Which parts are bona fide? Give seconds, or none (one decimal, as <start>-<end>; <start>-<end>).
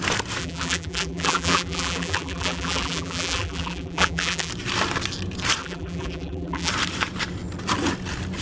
0.0-0.4; 4.5-5.6; 6.7-8.4